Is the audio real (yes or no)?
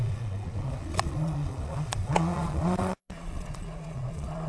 no